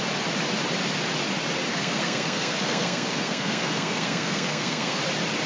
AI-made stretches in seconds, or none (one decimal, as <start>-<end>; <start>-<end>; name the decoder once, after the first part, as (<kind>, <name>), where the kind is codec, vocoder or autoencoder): 1.7-5.0 (codec, SNAC)